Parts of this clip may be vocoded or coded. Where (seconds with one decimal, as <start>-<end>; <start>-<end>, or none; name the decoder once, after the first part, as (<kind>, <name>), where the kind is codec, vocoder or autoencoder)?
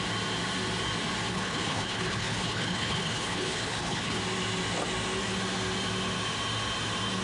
1.3-4.2 (codec, HILCodec)